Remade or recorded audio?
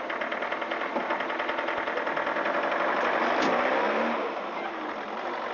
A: recorded